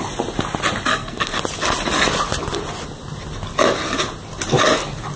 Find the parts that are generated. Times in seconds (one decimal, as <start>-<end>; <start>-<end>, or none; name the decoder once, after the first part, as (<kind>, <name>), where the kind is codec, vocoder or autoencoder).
0.9-1.4 (codec, SNAC)